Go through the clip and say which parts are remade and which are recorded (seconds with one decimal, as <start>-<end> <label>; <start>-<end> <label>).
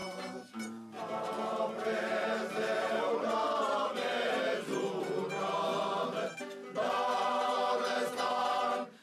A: 0.0-5.2 remade; 5.2-5.7 recorded; 5.7-8.1 remade; 8.1-9.0 recorded